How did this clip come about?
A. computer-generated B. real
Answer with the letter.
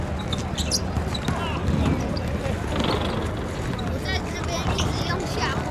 B